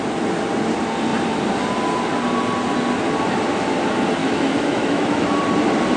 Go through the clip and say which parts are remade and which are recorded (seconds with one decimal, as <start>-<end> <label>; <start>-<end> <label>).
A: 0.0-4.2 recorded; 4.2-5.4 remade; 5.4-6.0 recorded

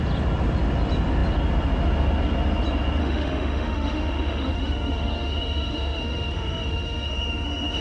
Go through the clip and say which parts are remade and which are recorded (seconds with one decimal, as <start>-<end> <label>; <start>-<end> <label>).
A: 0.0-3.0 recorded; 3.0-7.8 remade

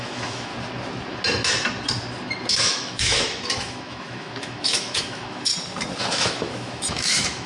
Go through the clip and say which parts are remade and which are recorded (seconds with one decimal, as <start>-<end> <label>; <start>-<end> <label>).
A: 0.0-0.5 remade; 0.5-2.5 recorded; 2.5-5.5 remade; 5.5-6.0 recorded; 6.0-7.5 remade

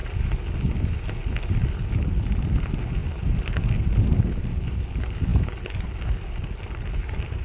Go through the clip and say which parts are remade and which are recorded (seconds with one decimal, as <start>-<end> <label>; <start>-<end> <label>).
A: 0.0-7.4 recorded

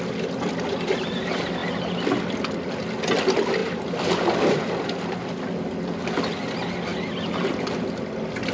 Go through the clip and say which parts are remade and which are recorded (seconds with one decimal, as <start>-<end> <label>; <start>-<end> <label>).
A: 0.0-8.5 recorded